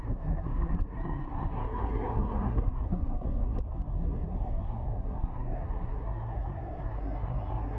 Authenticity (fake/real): fake